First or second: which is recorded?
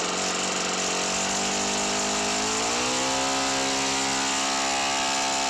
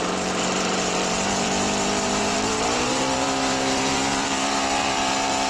first